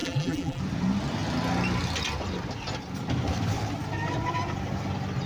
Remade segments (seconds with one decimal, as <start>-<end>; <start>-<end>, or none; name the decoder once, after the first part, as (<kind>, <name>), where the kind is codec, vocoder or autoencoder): 0.0-0.6 (vocoder, BigVGAN v2)